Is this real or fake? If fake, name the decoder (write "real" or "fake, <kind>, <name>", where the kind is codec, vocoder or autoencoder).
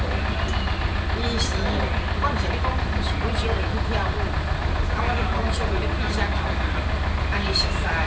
real